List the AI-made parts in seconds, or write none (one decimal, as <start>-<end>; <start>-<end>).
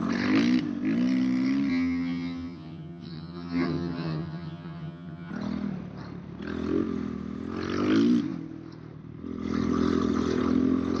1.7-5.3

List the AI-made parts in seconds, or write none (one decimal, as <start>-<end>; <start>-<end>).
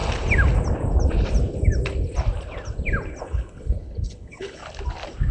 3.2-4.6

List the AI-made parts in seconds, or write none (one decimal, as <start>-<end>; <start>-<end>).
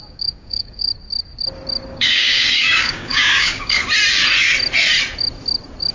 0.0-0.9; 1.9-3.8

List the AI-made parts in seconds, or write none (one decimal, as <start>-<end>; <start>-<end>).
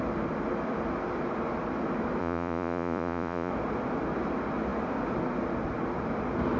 2.2-3.5